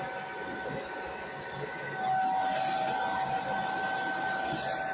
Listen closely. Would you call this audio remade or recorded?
recorded